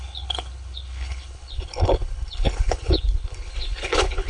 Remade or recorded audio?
remade